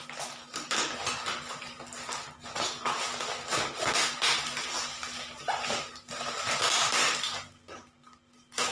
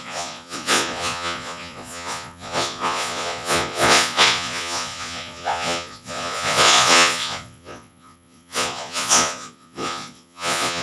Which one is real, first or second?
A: first